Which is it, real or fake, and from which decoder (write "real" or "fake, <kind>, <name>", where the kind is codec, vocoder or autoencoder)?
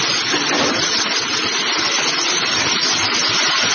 real